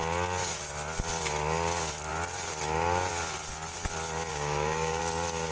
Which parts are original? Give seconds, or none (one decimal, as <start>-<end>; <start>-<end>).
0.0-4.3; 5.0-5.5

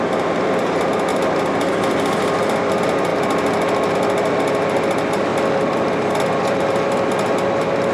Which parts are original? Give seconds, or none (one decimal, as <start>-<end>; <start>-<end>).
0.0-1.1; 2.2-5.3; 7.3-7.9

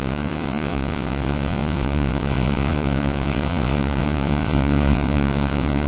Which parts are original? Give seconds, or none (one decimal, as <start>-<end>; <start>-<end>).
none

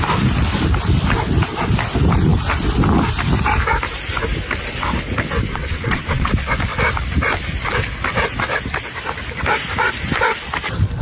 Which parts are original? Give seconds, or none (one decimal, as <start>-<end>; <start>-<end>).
0.0-5.5; 6.3-11.0

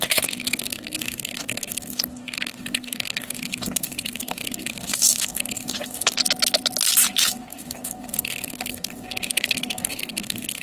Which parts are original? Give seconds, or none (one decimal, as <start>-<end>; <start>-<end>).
6.2-7.2